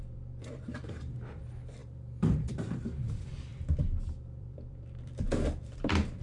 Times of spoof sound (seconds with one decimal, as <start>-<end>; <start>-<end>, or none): 0.0-6.2